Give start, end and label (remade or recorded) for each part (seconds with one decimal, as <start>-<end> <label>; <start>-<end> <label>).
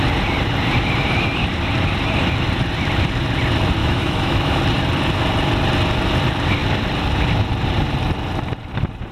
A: 0.0-3.8 recorded; 3.8-4.6 remade; 4.6-9.1 recorded